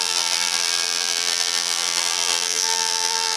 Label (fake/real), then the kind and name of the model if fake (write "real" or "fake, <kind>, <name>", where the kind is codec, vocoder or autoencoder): fake, vocoder, BigVGAN v2